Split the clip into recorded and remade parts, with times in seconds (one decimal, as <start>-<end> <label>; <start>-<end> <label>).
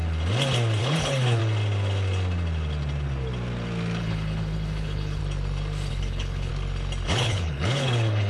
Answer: 0.0-0.8 recorded; 0.8-1.4 remade; 1.4-4.0 recorded; 4.0-5.2 remade; 5.2-5.9 recorded; 5.9-6.5 remade; 6.5-7.1 recorded; 7.1-8.3 remade